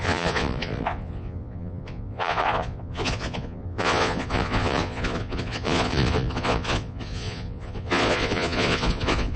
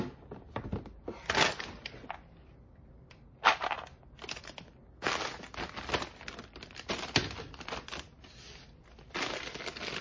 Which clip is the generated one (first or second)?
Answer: first